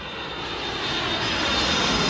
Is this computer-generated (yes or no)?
no